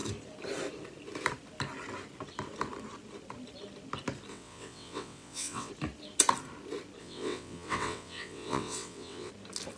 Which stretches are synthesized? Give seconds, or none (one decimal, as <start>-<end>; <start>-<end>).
4.3-5.7; 7.0-9.3